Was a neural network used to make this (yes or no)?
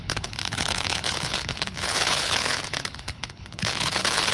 yes